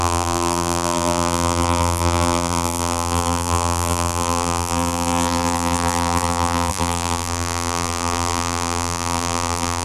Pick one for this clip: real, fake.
fake